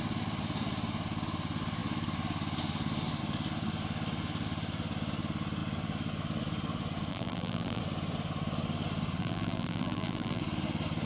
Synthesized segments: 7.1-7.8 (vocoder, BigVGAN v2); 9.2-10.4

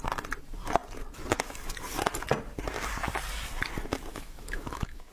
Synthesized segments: 4.1-5.1 (autoencoder, DAC-VAE)

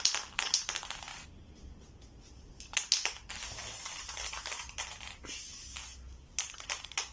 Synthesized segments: none

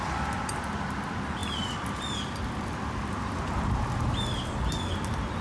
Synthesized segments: none

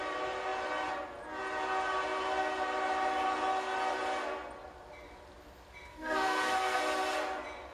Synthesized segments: 5.9-6.8 (codec, SNAC)